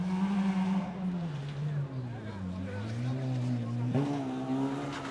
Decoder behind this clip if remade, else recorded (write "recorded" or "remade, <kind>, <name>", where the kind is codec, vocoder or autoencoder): recorded